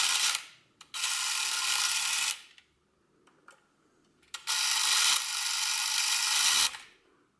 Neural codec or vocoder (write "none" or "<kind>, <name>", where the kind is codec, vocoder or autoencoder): none